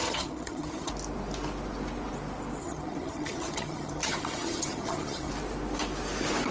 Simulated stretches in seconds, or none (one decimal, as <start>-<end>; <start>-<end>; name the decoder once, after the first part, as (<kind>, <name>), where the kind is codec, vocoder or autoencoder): 0.0-0.9 (vocoder, HiFi-GAN); 2.6-5.3